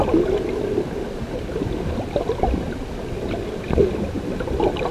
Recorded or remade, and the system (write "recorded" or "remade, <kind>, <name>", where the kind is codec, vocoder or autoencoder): recorded